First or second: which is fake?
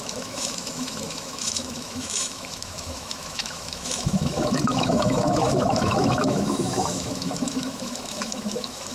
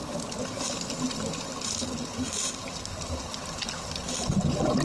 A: first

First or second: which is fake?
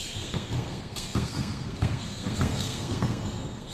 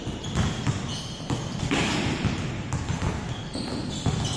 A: first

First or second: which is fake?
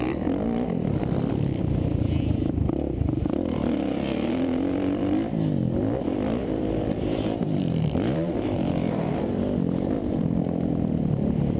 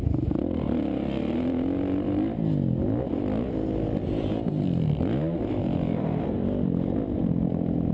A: first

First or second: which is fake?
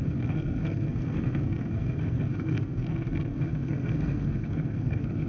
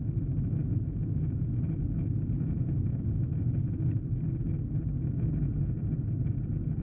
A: first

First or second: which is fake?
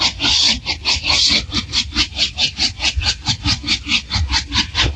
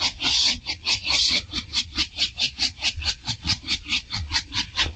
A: second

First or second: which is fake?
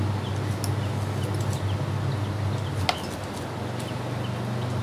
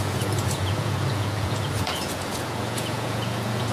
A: second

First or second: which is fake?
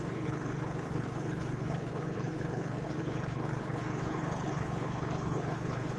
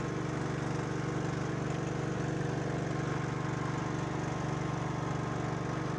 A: first